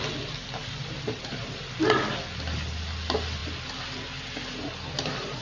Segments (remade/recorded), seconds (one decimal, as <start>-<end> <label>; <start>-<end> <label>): 0.0-0.6 recorded; 0.6-1.2 remade; 1.2-5.4 recorded